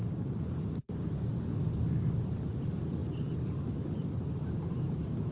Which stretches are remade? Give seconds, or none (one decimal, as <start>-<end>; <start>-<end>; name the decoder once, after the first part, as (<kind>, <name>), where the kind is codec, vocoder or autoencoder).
0.0-1.3 (vocoder, BigVGAN v2); 2.2-3.0; 3.8-5.3